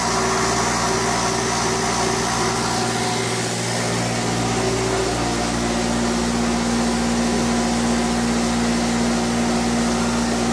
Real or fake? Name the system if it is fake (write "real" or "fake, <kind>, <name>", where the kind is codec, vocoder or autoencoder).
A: real